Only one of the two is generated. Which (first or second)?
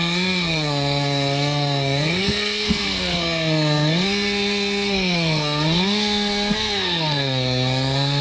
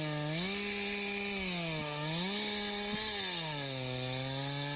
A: first